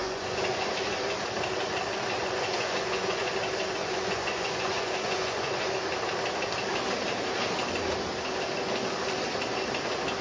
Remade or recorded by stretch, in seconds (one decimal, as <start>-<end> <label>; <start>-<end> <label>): 0.0-0.7 remade; 0.7-2.2 recorded; 2.2-3.3 remade; 3.3-3.8 recorded; 3.8-5.7 remade; 5.7-10.2 recorded